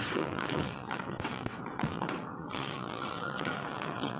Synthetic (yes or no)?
yes